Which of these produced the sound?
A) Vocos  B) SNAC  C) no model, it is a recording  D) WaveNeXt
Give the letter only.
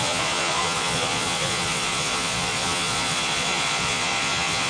A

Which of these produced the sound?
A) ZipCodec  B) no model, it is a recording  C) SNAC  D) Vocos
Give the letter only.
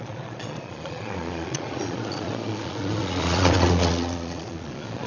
D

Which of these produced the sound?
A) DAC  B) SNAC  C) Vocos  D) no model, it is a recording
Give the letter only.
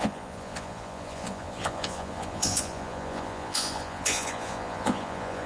C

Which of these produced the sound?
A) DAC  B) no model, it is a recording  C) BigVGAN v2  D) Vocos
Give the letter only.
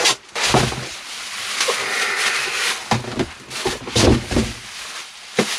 B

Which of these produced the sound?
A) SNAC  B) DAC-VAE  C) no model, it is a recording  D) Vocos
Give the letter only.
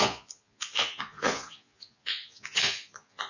D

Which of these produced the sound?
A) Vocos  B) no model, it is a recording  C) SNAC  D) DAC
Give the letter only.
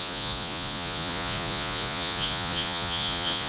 A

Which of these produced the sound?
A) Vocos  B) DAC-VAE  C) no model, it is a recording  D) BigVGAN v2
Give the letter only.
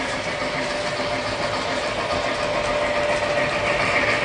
C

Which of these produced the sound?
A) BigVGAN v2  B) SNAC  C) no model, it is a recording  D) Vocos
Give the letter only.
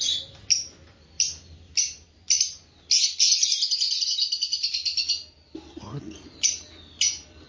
C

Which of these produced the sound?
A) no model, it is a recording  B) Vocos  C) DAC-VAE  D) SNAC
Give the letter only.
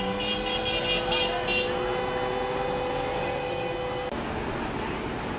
A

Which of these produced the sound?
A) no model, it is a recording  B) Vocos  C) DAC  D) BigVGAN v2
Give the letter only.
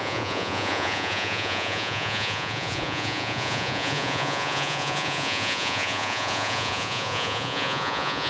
B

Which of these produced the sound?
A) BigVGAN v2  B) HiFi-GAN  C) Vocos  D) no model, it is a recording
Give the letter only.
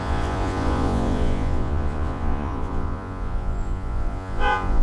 C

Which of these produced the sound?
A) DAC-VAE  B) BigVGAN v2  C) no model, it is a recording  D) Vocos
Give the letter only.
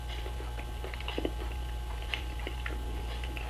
C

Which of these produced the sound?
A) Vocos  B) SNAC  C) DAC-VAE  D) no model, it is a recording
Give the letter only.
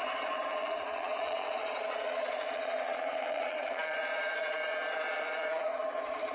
A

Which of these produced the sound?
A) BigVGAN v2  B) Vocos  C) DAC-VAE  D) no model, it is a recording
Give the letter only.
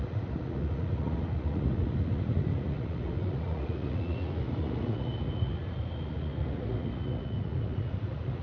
B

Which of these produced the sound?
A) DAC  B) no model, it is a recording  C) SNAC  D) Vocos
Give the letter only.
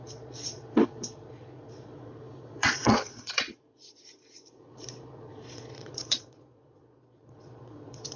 D